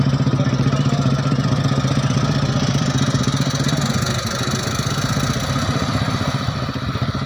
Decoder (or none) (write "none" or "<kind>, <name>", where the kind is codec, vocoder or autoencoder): vocoder, BigVGAN v2